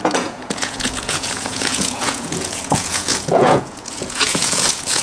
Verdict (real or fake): fake